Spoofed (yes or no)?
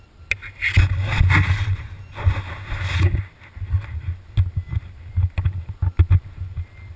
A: no